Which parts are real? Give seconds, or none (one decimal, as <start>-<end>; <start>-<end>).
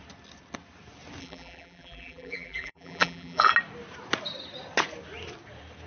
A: 0.0-1.2; 3.5-5.9